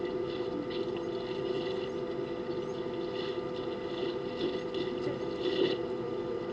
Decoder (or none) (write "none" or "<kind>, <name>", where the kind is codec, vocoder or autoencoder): none